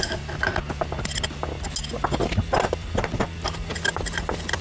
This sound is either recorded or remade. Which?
recorded